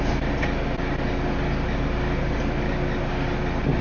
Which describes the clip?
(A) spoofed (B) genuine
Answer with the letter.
B